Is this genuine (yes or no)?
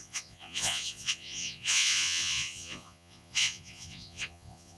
no